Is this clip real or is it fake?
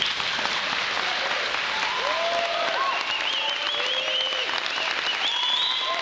real